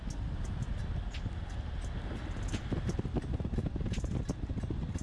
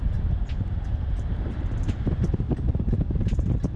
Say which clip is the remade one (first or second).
second